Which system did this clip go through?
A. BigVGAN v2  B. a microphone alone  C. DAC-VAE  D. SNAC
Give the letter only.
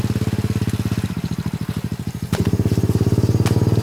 B